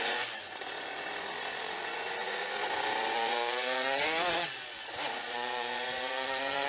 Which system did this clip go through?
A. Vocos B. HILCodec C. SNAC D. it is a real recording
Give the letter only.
A